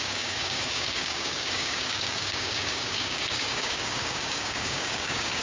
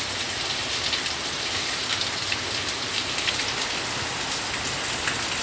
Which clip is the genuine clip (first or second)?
second